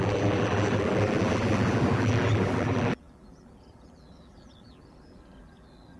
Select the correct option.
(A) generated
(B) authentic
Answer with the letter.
A